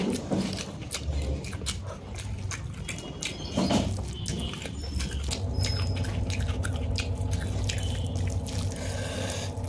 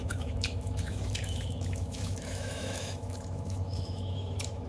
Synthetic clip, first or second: second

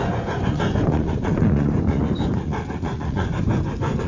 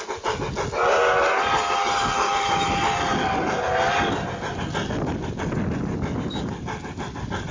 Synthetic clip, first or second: first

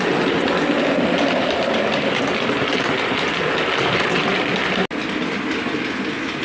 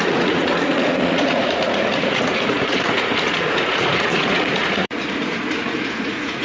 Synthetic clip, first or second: second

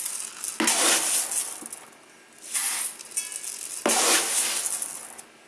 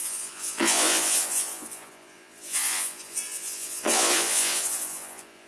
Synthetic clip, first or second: second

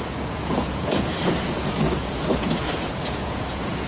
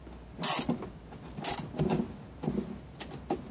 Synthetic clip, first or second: first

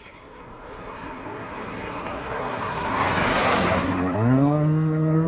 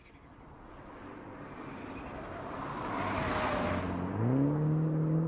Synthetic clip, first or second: first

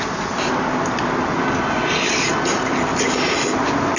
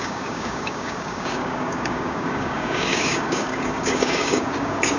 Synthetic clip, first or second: second